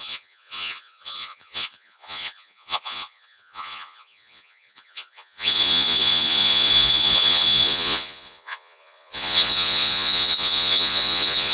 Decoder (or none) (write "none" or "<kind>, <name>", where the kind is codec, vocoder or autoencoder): vocoder, Vocos